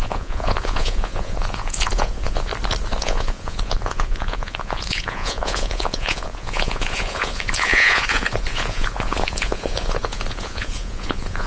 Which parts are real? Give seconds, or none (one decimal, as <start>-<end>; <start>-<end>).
2.5-3.0